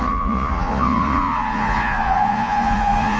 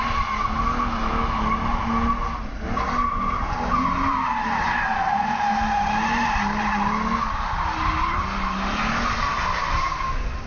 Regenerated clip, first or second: first